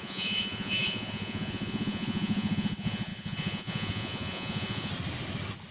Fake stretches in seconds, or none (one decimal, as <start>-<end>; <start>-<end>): 0.0-4.9